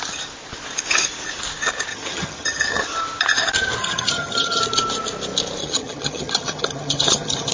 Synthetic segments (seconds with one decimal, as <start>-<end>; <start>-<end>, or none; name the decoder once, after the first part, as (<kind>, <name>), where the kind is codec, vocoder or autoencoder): 1.9-2.8 (vocoder, HiFi-GAN); 3.8-4.6; 5.6-7.5